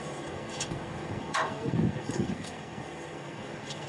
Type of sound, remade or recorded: remade